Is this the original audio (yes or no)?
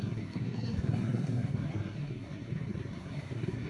no